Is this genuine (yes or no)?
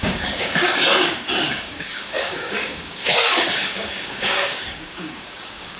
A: no